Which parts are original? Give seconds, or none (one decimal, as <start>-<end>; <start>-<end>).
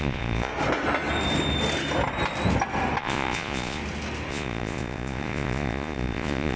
0.5-3.0; 3.8-4.3